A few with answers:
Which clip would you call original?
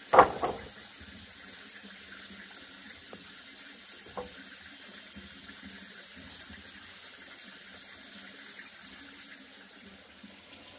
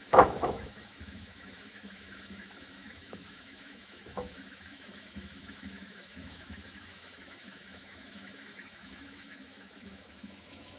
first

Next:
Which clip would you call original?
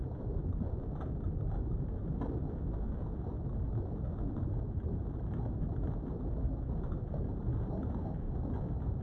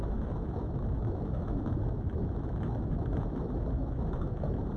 first